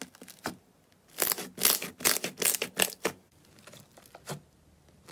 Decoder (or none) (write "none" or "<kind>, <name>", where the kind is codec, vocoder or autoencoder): none